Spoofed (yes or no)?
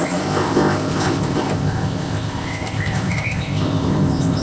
yes